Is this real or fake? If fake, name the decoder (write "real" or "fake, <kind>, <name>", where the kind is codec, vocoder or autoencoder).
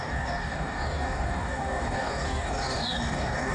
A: fake, codec, DAC